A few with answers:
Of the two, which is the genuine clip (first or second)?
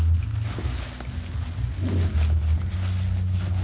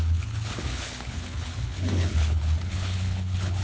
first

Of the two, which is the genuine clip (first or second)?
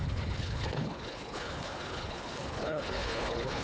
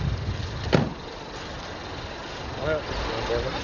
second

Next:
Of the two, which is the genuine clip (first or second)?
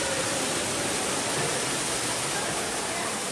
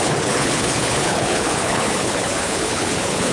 first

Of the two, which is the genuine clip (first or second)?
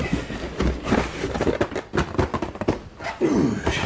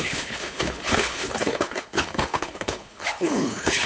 first